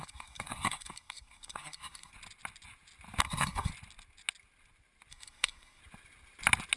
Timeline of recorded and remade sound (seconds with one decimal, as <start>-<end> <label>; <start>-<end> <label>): 0.0-2.1 remade; 2.1-3.2 recorded; 3.2-3.7 remade; 3.7-5.1 recorded; 5.1-5.8 remade; 5.8-6.8 recorded